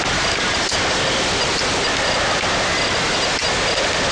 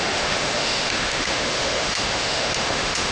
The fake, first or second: second